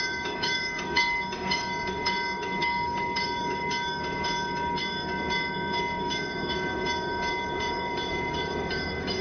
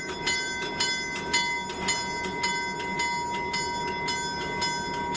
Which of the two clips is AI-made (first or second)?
first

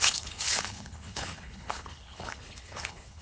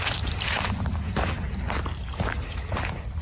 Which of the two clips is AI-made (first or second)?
first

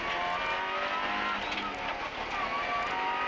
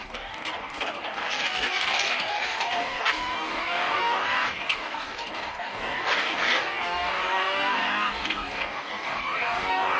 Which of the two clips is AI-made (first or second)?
second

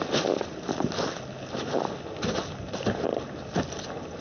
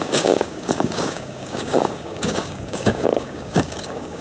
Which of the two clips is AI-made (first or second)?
second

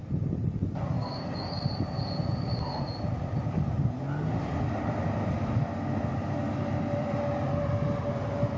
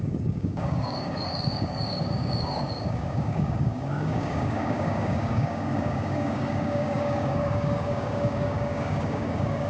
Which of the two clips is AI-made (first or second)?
second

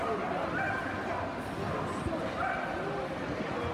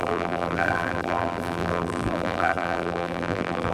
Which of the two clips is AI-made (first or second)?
second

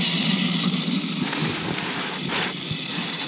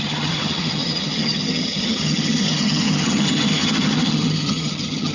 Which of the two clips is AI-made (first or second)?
second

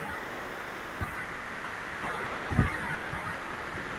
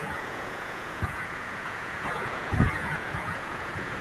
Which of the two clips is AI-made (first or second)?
second